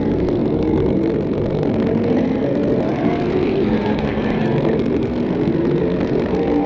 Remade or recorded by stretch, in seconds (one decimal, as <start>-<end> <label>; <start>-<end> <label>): 0.0-6.7 remade